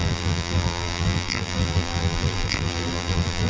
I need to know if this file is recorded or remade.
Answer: remade